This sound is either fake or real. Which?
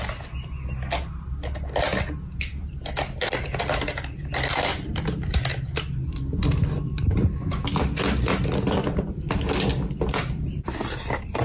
real